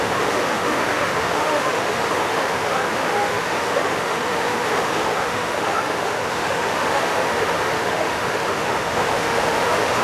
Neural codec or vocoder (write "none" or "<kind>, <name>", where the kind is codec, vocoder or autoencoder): autoencoder, DAC-VAE